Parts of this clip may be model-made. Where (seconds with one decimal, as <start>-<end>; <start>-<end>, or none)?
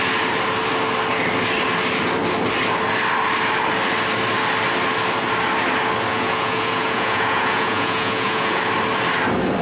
6.1-8.6